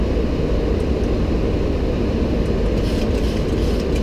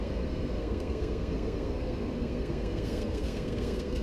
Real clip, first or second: first